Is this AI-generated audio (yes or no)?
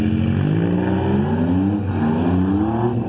no